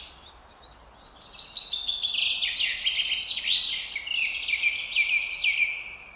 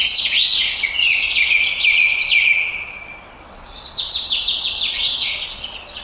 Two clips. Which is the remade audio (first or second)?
second